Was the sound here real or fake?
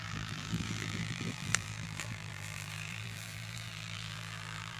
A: fake